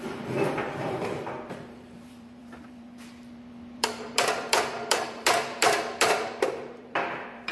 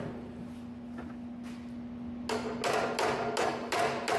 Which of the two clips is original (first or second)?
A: second